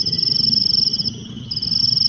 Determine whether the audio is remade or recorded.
recorded